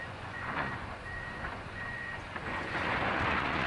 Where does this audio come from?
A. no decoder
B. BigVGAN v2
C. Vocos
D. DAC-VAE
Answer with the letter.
C